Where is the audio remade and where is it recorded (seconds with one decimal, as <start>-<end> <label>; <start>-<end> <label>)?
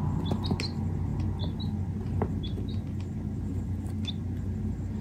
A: 0.0-5.0 recorded